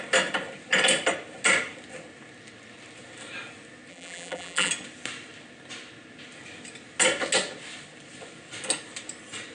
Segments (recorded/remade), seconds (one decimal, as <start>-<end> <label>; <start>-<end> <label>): 0.0-3.9 recorded; 3.9-4.7 remade; 4.7-9.5 recorded